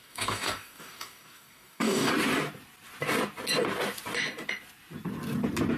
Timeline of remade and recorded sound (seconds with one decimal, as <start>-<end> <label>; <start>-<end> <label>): 0.0-2.1 remade; 2.1-5.8 recorded